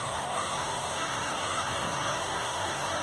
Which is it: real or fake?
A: fake